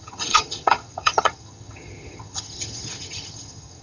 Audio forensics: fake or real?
fake